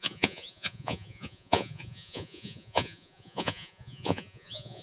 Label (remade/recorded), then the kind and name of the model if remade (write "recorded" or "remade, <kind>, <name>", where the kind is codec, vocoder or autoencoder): remade, vocoder, Vocos